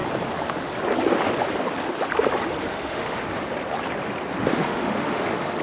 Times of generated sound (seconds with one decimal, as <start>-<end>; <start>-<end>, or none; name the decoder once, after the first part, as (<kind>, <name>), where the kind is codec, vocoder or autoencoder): 2.7-3.2 (autoencoder, DAC-VAE); 4.4-5.6

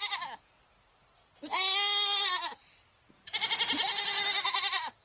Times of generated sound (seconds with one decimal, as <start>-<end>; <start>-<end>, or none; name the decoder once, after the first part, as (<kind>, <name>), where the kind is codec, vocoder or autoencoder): none

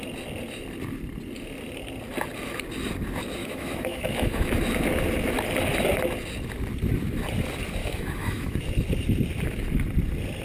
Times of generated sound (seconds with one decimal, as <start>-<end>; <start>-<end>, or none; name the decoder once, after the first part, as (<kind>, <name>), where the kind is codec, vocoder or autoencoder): 3.4-4.5 (autoencoder, DAC-VAE); 7.8-8.6

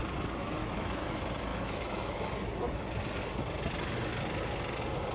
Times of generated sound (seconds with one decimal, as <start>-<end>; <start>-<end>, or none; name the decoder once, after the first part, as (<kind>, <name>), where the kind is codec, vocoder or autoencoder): 0.6-1.1 (autoencoder, DAC-VAE); 1.5-2.9

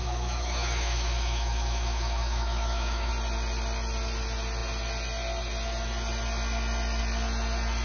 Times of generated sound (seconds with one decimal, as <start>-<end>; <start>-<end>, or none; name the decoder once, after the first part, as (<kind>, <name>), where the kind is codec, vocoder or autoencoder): 0.0-3.1 (autoencoder, DAC-VAE)

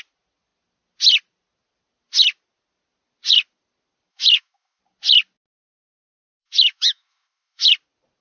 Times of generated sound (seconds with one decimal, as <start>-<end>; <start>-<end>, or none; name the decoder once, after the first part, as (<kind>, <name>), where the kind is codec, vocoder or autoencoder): 4.1-4.8 (autoencoder, DAC-VAE); 6.4-7.7

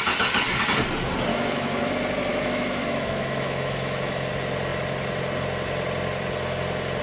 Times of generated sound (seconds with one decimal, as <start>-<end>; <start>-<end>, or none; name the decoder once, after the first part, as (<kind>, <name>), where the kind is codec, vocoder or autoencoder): 1.3-1.9 (autoencoder, DAC-VAE); 2.3-4.3